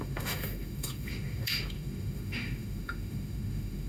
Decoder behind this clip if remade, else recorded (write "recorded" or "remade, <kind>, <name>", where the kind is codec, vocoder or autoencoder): remade, autoencoder, DAC-VAE